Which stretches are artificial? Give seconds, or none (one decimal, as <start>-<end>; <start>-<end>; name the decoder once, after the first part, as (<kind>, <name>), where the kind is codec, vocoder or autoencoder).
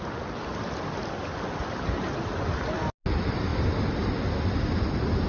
none